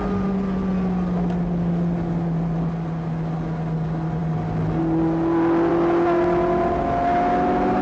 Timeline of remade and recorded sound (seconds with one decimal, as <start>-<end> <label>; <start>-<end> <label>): 0.0-7.8 recorded